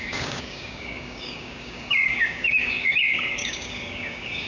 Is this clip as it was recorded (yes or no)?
no